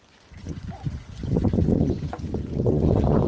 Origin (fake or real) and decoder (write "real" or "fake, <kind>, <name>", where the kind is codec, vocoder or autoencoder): fake, vocoder, Vocos